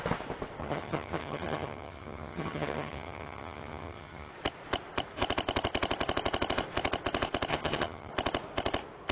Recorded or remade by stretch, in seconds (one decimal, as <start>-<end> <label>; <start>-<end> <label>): 0.0-0.6 recorded; 0.6-4.3 remade; 4.3-7.5 recorded; 7.5-8.1 remade; 8.1-9.1 recorded